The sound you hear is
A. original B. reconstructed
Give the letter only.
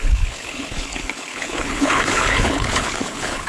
B